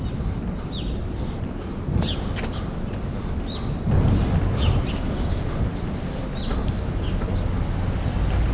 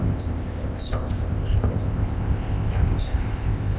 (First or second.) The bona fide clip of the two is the first